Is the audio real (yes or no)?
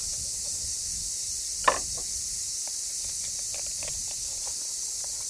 yes